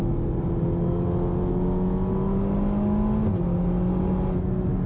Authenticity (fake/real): real